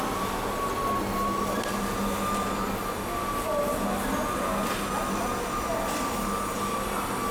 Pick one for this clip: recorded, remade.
recorded